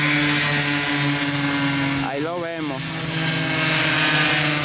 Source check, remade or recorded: recorded